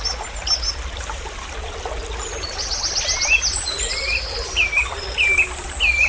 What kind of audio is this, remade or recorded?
recorded